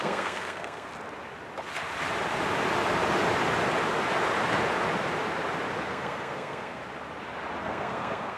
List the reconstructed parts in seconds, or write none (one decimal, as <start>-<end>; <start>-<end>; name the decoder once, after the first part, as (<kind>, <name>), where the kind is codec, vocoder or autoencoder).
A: 0.0-0.9 (codec, SNAC); 5.8-6.8; 7.6-8.4